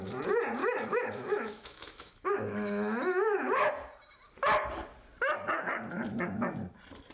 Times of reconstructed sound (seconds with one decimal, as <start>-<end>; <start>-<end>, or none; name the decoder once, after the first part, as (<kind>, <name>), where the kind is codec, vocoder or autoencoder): 0.6-3.7 (autoencoder, DAC-VAE)